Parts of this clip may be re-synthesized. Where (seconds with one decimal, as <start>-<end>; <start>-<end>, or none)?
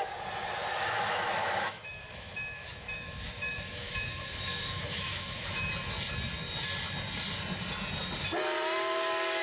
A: 0.6-5.7